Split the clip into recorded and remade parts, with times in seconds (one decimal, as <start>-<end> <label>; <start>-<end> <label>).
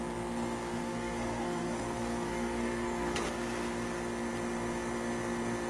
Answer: 0.0-0.8 recorded; 0.8-3.3 remade; 3.3-5.7 recorded